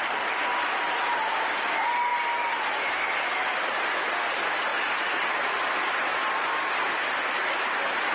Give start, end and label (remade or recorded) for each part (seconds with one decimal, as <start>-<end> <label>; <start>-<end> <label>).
0.0-8.1 recorded